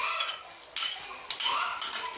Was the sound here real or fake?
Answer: real